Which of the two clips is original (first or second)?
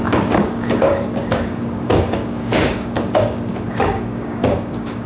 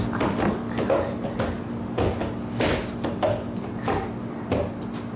second